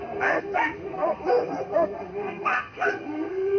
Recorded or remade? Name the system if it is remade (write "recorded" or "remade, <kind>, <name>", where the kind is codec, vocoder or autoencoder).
remade, codec, SNAC